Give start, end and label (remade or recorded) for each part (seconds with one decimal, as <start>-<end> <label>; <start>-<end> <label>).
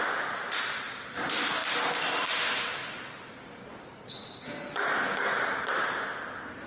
0.0-6.7 recorded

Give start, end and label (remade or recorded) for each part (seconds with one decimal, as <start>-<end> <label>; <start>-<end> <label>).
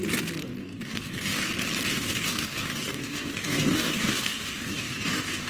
0.0-0.6 recorded; 0.6-1.5 remade; 1.5-1.9 recorded; 1.9-5.5 remade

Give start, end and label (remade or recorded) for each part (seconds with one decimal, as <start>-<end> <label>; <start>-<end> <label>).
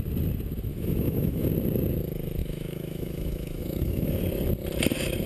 0.0-0.7 recorded; 0.7-1.5 remade; 1.5-2.4 recorded; 2.4-4.1 remade; 4.1-5.3 recorded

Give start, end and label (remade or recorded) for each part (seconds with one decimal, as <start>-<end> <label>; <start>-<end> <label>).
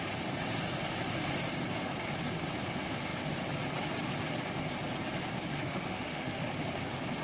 0.0-5.6 recorded; 5.6-6.5 remade; 6.5-7.2 recorded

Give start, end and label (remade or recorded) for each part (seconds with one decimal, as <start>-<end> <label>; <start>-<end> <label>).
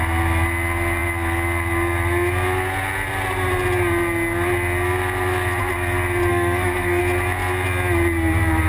0.0-6.3 recorded; 6.3-7.0 remade; 7.0-8.7 recorded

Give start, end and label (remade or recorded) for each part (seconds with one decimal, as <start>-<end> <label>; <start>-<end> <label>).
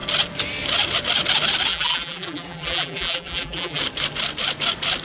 0.0-1.7 recorded; 1.7-3.8 remade; 3.8-5.0 recorded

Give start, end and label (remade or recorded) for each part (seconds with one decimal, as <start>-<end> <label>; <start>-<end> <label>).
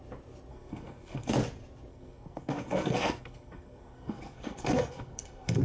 0.0-0.5 recorded; 0.5-1.3 remade; 1.3-1.9 recorded; 1.9-5.6 remade